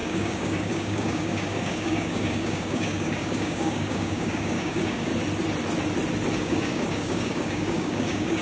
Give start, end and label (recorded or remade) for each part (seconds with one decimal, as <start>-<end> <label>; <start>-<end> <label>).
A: 0.0-5.1 remade; 5.1-6.3 recorded; 6.3-8.4 remade